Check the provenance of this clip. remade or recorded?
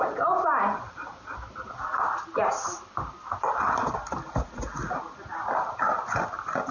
recorded